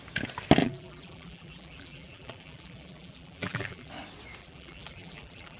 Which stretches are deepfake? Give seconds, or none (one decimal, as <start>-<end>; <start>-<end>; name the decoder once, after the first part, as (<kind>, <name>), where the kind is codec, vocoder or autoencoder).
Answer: 0.6-3.9 (vocoder, BigVGAN v2); 4.4-5.6